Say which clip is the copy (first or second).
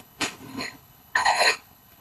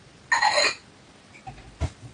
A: first